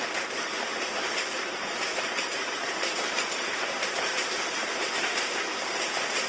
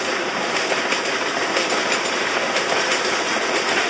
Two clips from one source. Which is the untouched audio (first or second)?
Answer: second